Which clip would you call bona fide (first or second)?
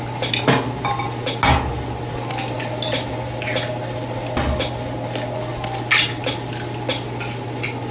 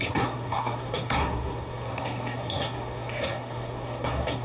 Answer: first